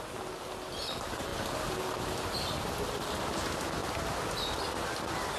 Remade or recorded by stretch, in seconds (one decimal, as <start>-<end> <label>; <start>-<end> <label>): 0.0-5.4 recorded

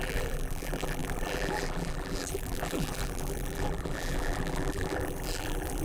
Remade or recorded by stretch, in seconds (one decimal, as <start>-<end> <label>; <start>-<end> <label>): 0.0-5.8 remade

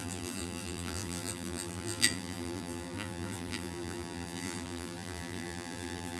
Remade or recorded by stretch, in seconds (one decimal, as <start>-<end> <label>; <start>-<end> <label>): 0.0-6.2 remade

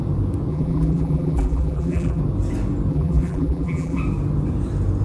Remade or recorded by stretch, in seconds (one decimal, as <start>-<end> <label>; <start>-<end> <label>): 0.0-0.5 recorded; 0.5-2.2 remade; 2.2-2.9 recorded; 2.9-4.0 remade; 4.0-5.0 recorded

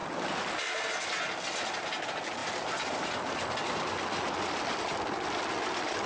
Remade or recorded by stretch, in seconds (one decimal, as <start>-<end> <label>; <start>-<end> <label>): 0.0-0.8 remade; 0.8-2.4 recorded; 2.4-6.1 remade

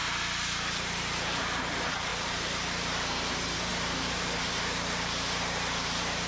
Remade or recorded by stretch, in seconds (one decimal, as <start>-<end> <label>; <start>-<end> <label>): 0.0-1.4 remade; 1.4-2.1 recorded; 2.1-3.3 remade; 3.3-3.7 recorded; 3.7-6.3 remade

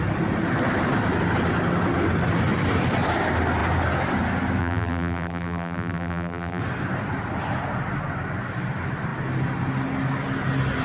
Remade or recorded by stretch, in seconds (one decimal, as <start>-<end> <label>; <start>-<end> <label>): 0.0-4.6 recorded; 4.6-6.6 remade; 6.6-10.8 recorded

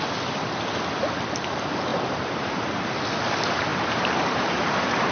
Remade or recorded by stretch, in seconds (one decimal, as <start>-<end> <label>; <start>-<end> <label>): 0.0-1.9 recorded; 1.9-2.9 remade; 2.9-3.7 recorded; 3.7-5.1 remade